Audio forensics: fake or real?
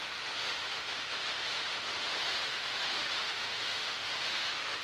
fake